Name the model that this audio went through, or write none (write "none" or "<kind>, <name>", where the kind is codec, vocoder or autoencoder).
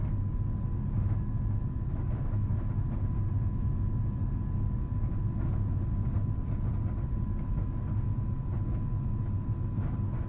none